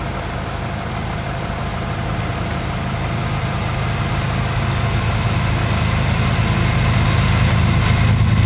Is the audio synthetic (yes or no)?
no